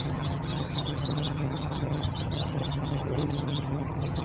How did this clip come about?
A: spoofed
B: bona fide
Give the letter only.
A